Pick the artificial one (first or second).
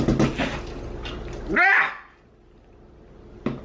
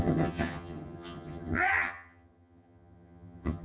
second